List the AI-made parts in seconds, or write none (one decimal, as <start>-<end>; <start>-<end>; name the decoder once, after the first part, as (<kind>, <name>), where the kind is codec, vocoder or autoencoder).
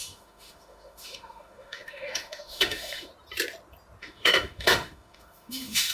0.0-3.1 (autoencoder, DAC-VAE); 4.0-5.9